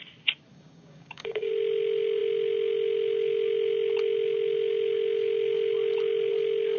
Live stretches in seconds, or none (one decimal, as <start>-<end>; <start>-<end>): 0.0-0.5; 1.5-6.8